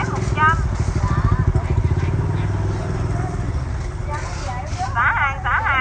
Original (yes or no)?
yes